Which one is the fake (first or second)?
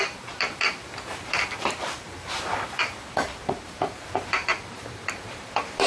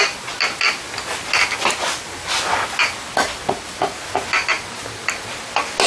first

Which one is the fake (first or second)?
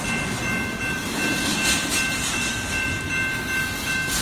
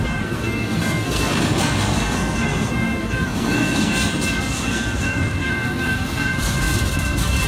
second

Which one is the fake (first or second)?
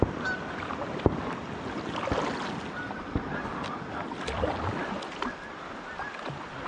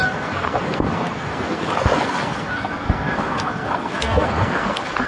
second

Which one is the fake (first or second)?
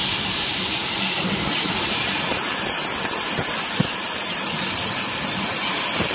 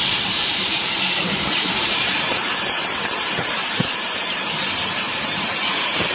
second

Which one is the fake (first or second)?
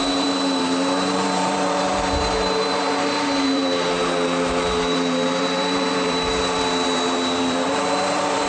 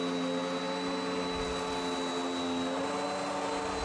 first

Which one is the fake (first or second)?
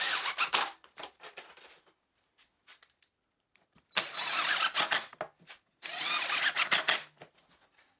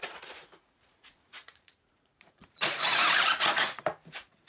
second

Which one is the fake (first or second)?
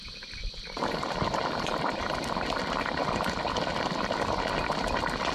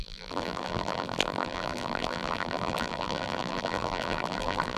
second